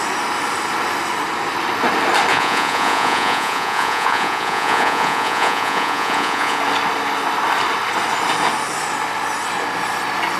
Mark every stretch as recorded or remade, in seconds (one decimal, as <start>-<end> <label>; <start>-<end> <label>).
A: 0.0-2.3 recorded; 2.3-6.6 remade; 6.6-10.4 recorded

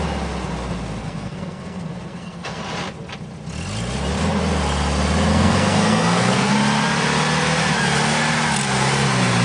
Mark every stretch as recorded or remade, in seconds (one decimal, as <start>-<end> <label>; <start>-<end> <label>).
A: 0.0-1.0 recorded; 1.0-2.6 remade; 2.6-5.3 recorded; 5.3-6.5 remade; 6.5-9.4 recorded

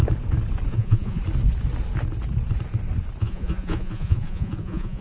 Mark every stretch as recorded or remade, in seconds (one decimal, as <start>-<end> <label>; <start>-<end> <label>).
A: 0.0-0.7 recorded; 0.7-1.2 remade; 1.2-3.2 recorded; 3.2-5.0 remade

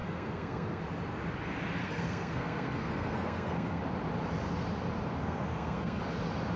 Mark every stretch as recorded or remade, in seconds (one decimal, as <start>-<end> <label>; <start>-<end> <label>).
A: 0.0-0.8 remade; 0.8-1.8 recorded; 1.8-3.8 remade; 3.8-5.2 recorded; 5.2-6.0 remade; 6.0-6.6 recorded

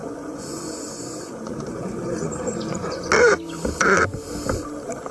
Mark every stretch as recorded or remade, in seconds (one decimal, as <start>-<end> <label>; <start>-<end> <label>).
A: 0.0-3.1 remade; 3.1-5.1 recorded